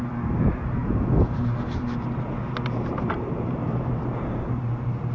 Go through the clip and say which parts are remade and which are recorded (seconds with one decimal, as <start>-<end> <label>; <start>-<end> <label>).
0.0-5.1 remade